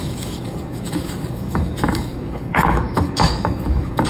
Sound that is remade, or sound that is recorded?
remade